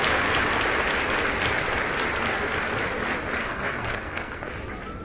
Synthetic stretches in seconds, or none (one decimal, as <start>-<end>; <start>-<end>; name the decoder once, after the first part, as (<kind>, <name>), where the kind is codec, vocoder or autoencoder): 3.4-4.5 (codec, SNAC)